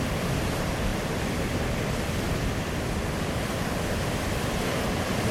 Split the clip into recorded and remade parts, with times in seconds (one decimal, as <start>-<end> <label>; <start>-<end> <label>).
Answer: 0.0-5.3 recorded